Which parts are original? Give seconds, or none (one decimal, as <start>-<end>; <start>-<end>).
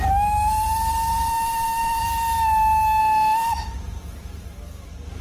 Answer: 0.0-1.3; 2.0-3.0; 3.5-5.2